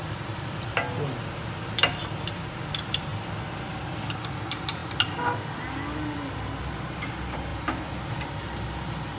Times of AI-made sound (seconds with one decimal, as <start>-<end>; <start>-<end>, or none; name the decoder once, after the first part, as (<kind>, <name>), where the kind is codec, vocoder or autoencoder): none

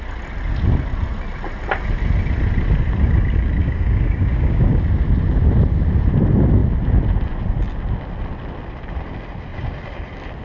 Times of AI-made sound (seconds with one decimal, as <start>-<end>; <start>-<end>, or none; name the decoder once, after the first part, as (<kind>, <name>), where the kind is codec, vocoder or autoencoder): 3.6-4.8 (codec, DAC)